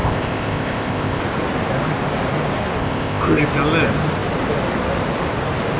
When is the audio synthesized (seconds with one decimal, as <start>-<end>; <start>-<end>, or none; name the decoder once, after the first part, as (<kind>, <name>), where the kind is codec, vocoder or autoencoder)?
0.0-1.2 (codec, ZipCodec); 2.8-3.4